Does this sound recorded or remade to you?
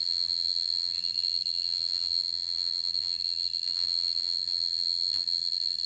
remade